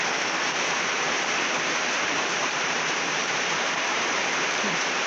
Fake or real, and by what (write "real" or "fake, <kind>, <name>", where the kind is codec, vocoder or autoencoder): fake, vocoder, BigVGAN v2